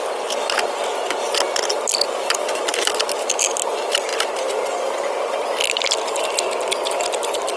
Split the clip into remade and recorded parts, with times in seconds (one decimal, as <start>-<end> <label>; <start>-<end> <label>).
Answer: 0.0-7.6 recorded